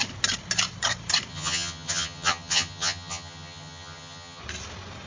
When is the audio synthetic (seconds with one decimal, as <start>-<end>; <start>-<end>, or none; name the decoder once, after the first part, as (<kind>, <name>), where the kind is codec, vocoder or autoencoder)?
1.3-4.4 (vocoder, HiFi-GAN)